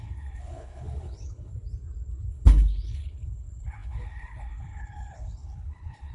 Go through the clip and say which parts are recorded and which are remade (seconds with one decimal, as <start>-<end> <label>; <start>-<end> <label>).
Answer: 0.0-1.5 remade; 1.5-2.3 recorded; 2.3-6.1 remade